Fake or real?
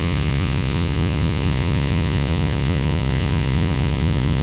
fake